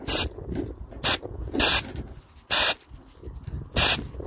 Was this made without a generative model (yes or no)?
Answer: yes